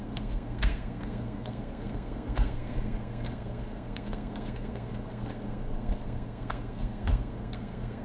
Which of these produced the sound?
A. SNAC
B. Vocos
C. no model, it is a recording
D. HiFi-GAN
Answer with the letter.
A